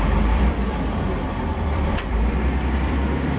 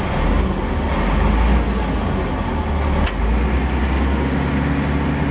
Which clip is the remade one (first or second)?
first